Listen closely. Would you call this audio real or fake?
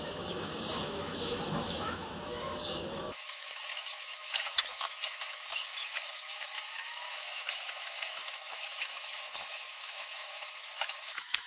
fake